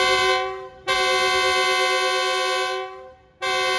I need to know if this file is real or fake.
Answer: real